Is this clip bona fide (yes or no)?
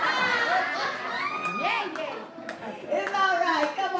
yes